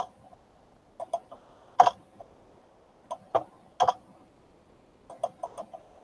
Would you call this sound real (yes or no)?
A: yes